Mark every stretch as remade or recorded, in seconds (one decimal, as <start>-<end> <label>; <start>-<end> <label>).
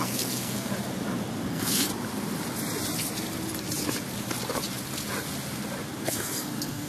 0.0-0.7 remade; 0.7-1.5 recorded; 1.5-1.9 remade; 1.9-6.0 recorded; 6.0-6.9 remade